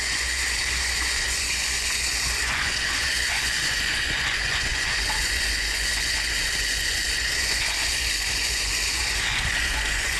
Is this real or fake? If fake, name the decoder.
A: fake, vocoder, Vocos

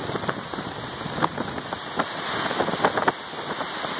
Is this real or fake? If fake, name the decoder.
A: real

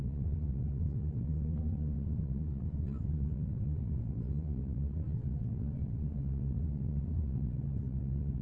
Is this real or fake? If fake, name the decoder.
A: fake, vocoder, WaveNeXt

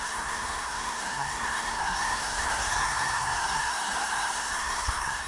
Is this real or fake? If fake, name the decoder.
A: fake, codec, SNAC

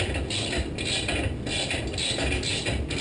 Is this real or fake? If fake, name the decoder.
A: real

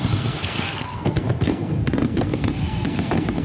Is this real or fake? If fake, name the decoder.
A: fake, codec, SNAC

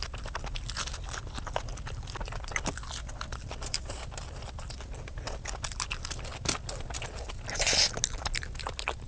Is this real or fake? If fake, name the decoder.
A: real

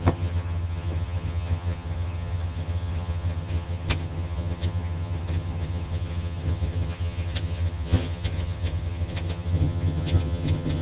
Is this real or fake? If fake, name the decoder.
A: fake, vocoder, HiFi-GAN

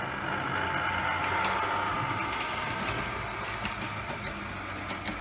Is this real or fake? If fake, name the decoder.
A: real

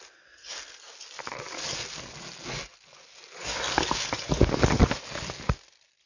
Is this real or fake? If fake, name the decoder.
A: real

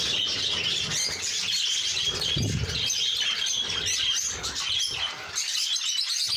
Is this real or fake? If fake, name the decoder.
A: real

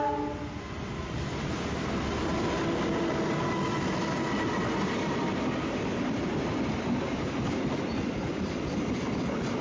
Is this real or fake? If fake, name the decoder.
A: real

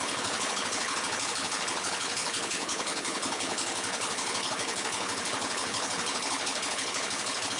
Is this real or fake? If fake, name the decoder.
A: fake, codec, HILCodec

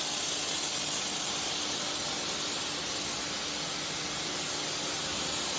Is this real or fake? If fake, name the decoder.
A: real